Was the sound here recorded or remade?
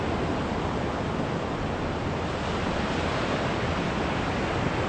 recorded